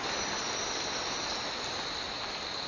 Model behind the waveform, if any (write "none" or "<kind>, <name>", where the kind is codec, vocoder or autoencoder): none